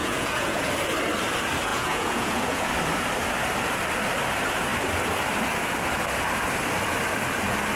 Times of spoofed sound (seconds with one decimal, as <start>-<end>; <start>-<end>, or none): 0.0-0.7; 1.7-2.7

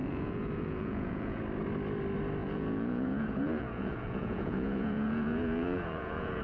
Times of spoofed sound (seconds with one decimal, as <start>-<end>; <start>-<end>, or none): 0.0-1.4; 2.4-6.4

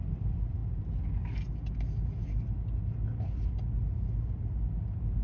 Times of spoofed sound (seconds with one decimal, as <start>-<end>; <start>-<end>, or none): none

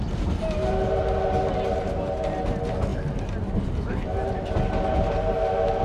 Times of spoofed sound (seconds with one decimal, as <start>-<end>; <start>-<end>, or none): none

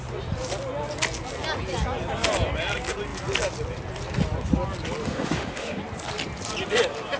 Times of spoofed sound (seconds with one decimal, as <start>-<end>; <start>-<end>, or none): 5.0-5.8

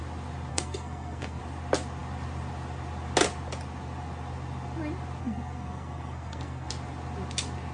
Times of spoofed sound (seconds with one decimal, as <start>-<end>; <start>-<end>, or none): 0.5-1.4; 5.2-6.7

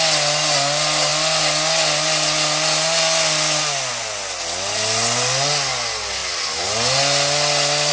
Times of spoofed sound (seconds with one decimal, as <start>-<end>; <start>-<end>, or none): none